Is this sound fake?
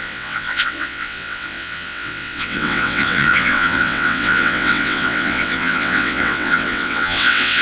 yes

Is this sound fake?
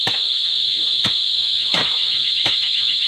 yes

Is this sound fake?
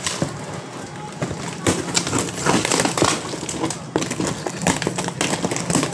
no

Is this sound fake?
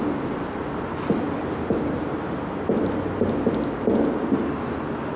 no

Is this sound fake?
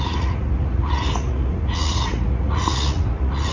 yes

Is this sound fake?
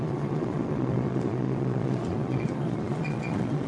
yes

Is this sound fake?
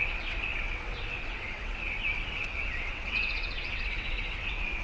yes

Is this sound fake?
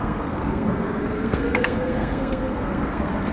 yes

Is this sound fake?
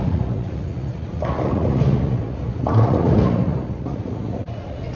yes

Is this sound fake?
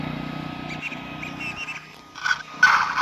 no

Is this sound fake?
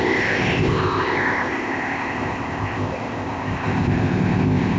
yes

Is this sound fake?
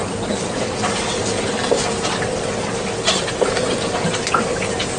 no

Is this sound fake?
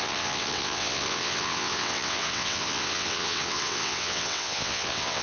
yes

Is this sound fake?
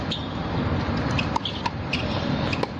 no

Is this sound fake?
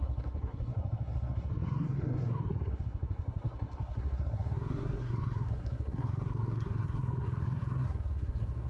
yes